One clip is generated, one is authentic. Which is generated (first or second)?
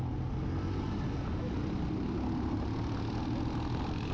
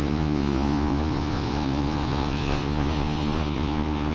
second